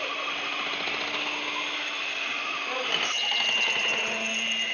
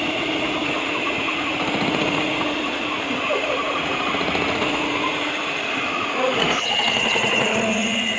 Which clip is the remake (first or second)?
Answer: second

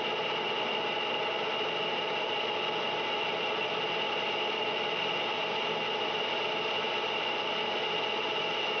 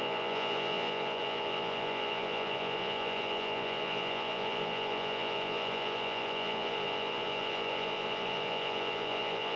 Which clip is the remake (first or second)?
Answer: second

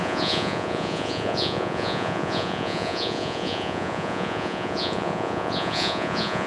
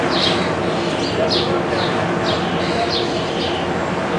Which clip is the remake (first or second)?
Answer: first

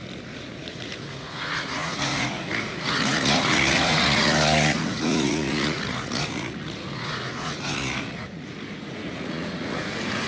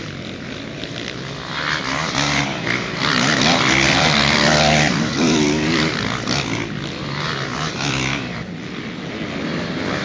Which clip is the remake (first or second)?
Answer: first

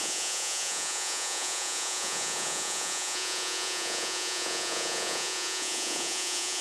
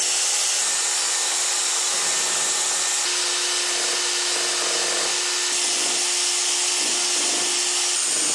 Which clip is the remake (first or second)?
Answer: first